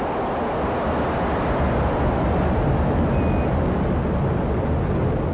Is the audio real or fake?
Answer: real